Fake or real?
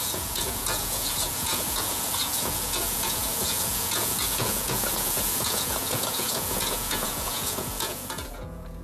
fake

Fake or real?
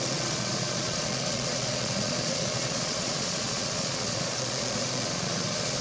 fake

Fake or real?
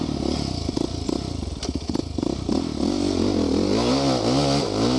real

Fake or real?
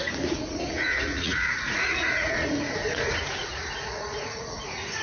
fake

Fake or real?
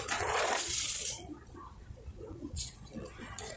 fake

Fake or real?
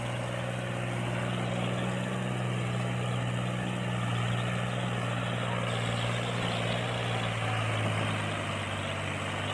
real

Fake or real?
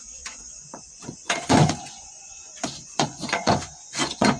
fake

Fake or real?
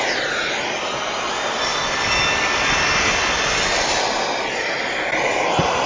real